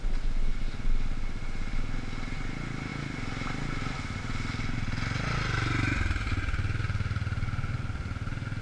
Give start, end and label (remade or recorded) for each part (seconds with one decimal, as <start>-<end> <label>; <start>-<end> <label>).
0.0-8.6 recorded

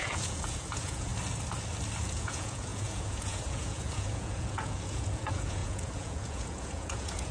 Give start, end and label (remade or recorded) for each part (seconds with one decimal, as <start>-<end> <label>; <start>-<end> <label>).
0.0-1.1 remade; 1.1-2.0 recorded; 2.0-7.3 remade